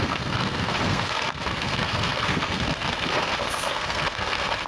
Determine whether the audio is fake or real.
fake